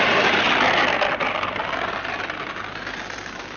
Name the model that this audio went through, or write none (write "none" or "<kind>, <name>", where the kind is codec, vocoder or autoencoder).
none